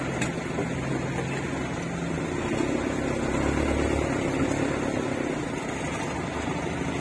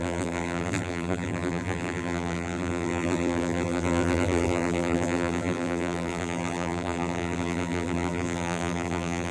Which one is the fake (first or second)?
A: second